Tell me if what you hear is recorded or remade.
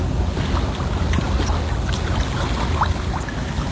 recorded